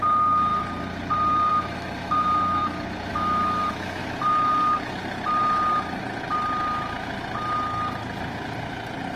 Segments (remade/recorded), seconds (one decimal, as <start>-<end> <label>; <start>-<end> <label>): 0.0-0.5 remade; 0.5-1.5 recorded; 1.5-2.6 remade; 2.6-3.1 recorded; 3.1-4.0 remade; 4.0-9.2 recorded